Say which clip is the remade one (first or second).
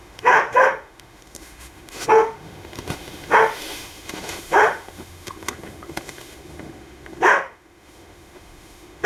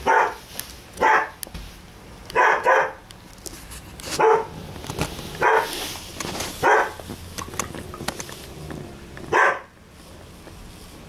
first